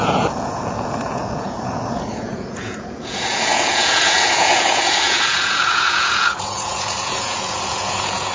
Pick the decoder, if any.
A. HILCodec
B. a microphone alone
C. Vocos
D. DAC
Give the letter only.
C